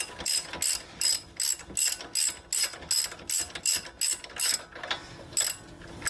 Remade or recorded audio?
recorded